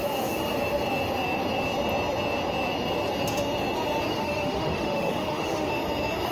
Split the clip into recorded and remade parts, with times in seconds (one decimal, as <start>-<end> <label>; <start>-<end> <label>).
0.0-4.1 recorded; 4.1-5.7 remade; 5.7-6.3 recorded